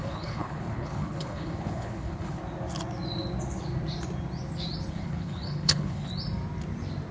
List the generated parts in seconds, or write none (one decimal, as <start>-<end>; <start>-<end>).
0.0-2.4; 4.9-6.1